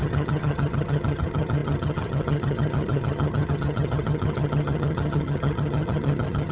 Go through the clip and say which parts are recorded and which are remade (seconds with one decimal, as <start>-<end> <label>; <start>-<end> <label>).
0.0-6.5 remade